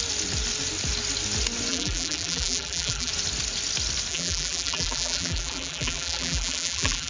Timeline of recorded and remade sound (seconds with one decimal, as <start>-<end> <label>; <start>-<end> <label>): 0.0-1.7 recorded; 1.7-3.1 remade; 3.1-4.1 recorded; 4.1-7.1 remade